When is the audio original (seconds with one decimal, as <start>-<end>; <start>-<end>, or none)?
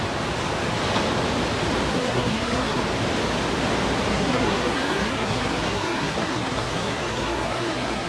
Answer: 0.0-1.9; 2.8-4.1